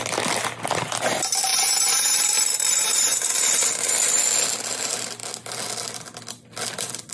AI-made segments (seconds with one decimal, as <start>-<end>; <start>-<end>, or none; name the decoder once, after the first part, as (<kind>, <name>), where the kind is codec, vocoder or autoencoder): 1.5-4.2 (vocoder, BigVGAN v2)